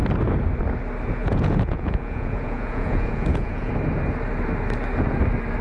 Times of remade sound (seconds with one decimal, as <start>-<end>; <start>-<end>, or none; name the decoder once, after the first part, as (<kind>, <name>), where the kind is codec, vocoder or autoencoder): 1.2-3.7 (vocoder, Vocos)